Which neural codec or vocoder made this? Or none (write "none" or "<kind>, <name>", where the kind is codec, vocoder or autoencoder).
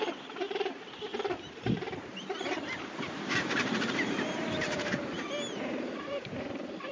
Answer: vocoder, BigVGAN v2